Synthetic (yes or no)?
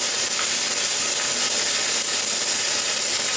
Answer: no